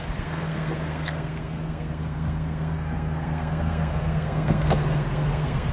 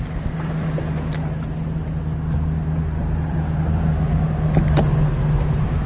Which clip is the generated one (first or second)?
first